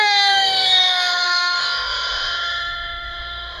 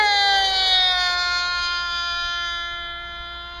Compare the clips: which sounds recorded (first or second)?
second